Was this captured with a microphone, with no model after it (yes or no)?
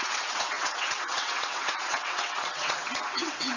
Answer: no